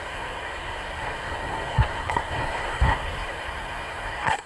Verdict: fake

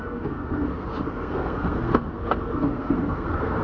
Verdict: fake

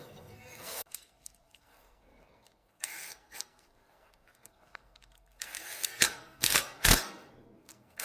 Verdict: fake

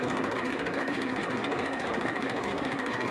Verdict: fake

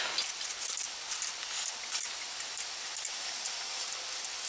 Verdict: real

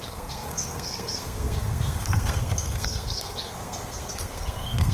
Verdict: fake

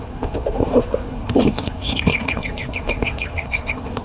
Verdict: fake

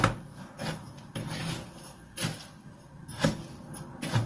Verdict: real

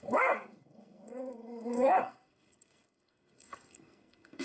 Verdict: fake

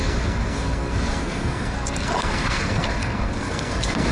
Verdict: fake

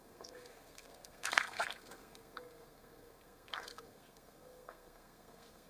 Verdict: fake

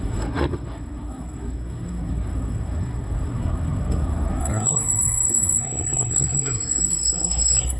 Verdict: fake